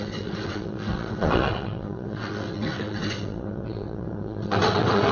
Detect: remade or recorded remade